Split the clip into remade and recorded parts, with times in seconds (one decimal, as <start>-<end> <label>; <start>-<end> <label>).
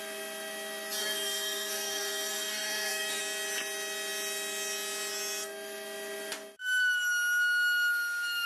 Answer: 0.0-1.0 recorded; 1.0-3.2 remade; 3.2-8.5 recorded